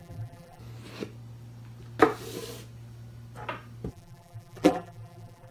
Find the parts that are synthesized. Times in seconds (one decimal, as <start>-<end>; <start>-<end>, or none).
0.0-0.6; 3.9-5.5